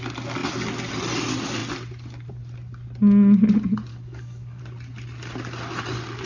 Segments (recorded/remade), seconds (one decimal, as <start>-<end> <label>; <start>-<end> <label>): 0.0-3.9 recorded; 3.9-4.6 remade; 4.6-6.3 recorded